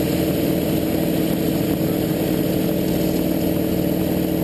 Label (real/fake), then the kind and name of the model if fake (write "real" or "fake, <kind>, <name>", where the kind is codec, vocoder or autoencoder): real